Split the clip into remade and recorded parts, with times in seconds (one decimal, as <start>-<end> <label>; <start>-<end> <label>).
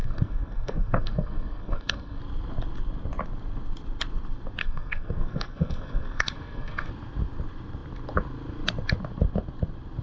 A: 0.0-2.2 remade; 2.2-4.6 recorded; 4.6-6.9 remade; 6.9-10.0 recorded